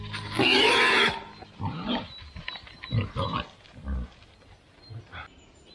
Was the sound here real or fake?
real